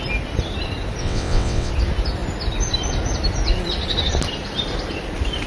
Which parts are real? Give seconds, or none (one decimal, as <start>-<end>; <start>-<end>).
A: 0.0-1.0; 1.7-5.5